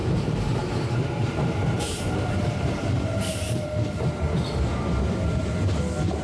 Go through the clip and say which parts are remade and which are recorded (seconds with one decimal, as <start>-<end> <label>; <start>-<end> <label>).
0.0-3.7 remade; 3.7-6.2 recorded